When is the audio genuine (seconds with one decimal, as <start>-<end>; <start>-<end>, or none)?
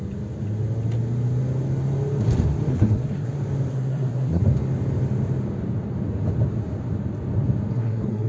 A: 0.0-2.7; 3.3-3.7; 4.4-7.7